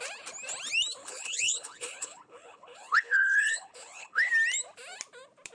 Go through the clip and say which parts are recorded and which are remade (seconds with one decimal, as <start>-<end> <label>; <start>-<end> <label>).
0.0-1.0 recorded; 1.0-4.3 remade; 4.3-5.5 recorded